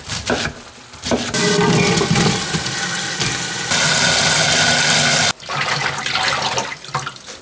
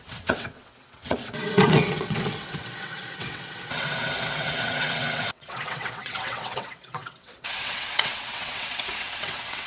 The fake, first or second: second